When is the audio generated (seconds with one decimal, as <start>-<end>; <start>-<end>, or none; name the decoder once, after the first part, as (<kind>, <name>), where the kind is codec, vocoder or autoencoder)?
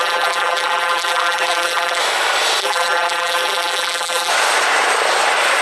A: 0.0-2.0 (vocoder, BigVGAN v2); 2.6-4.3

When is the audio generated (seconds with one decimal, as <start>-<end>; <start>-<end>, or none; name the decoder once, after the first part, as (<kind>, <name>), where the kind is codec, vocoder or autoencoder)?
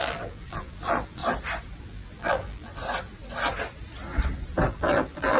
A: 0.0-1.2 (vocoder, BigVGAN v2); 1.8-2.8; 4.7-5.4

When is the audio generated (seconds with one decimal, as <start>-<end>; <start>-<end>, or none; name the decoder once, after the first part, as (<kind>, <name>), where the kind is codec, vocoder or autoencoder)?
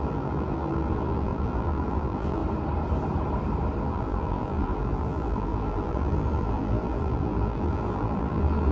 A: 0.0-2.4 (vocoder, BigVGAN v2); 3.8-8.7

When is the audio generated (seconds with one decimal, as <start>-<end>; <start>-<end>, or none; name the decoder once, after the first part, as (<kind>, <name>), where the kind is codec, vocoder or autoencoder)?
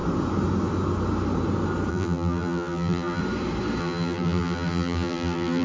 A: 1.9-3.2 (vocoder, BigVGAN v2); 3.8-5.6